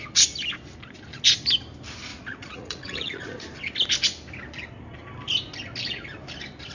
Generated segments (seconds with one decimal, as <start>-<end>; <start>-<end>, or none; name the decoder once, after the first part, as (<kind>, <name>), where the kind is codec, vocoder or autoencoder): 2.1-3.2 (vocoder, Vocos)